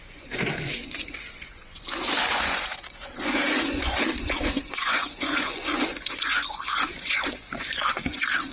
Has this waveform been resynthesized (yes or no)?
yes